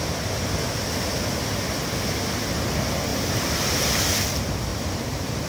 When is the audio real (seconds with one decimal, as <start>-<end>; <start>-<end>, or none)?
0.0-3.1; 3.9-4.7